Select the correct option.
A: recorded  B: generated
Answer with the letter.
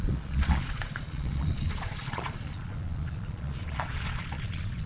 B